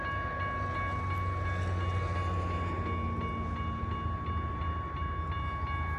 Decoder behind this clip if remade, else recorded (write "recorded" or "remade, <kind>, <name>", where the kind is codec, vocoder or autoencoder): recorded